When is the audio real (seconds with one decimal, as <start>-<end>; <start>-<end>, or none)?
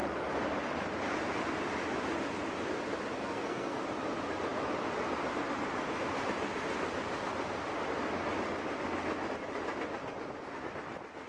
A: 0.0-3.2; 3.8-11.3